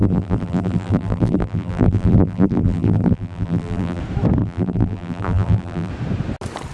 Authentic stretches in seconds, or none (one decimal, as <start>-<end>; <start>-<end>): 4.0-4.4; 5.9-6.7